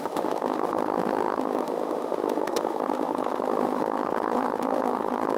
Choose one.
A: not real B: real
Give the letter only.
A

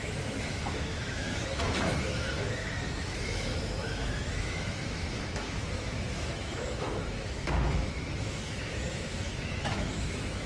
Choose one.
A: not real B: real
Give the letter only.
A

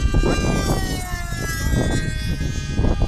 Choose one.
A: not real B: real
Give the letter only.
B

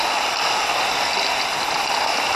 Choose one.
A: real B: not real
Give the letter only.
A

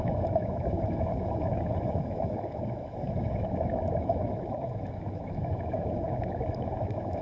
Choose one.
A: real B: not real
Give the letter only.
B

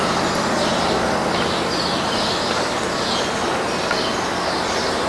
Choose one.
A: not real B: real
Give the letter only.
B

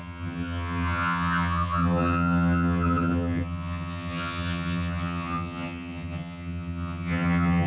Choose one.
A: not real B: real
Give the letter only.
A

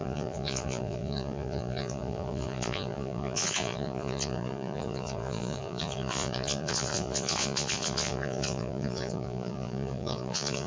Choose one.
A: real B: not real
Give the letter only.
B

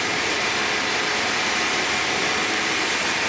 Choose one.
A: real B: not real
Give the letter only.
A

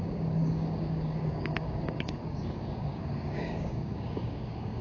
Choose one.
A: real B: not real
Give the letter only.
B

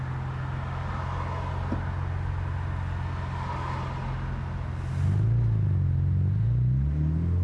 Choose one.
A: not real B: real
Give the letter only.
B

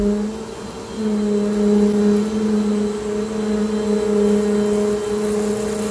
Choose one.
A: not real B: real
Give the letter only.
B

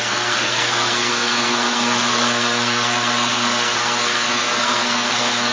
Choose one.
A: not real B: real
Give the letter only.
A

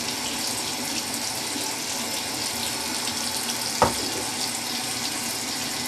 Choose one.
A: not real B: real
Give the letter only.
B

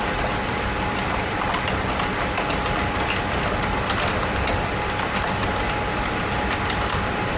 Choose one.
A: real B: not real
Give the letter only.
A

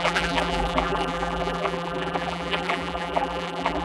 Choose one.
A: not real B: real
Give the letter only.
A